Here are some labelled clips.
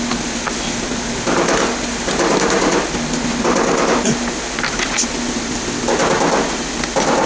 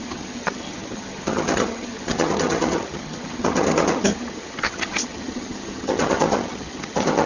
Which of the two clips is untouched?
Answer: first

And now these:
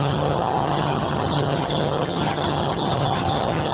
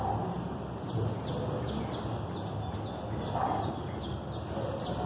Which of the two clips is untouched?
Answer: second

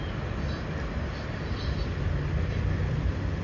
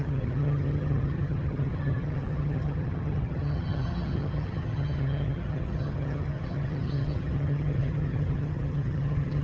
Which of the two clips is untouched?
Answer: first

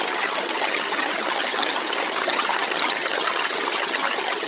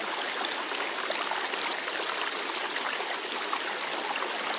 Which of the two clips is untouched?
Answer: second